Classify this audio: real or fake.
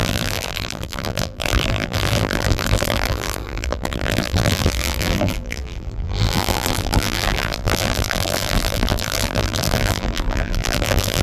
fake